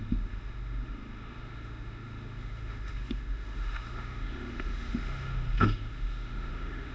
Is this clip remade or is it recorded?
remade